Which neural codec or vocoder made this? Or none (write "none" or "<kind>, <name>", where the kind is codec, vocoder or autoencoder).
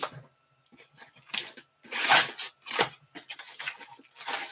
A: none